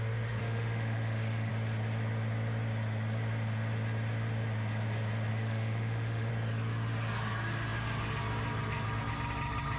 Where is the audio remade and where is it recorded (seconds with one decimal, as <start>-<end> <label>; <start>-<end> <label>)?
0.0-0.4 recorded; 0.4-1.5 remade; 1.5-5.3 recorded; 5.3-6.3 remade; 6.3-9.8 recorded